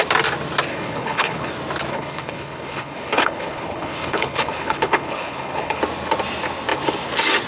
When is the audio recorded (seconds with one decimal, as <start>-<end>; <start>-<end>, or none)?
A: 0.0-0.7; 1.5-1.9; 5.8-7.5

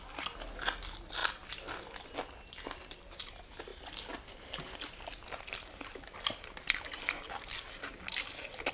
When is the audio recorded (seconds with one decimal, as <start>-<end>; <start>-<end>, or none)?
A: 0.0-8.7

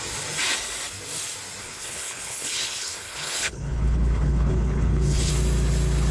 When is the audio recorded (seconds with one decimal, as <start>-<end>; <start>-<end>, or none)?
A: 0.0-1.6; 5.3-6.1

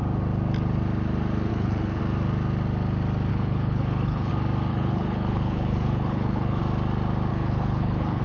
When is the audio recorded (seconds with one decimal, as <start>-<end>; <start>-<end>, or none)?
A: 0.0-1.5; 2.0-3.3; 4.3-4.7; 6.6-7.3

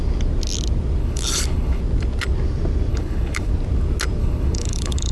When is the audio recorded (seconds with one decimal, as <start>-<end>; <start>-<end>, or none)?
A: 0.0-1.0; 1.8-2.9; 3.5-4.2